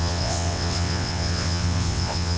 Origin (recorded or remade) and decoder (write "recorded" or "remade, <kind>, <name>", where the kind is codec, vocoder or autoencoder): remade, vocoder, WaveNeXt